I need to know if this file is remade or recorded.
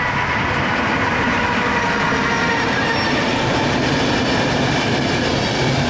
recorded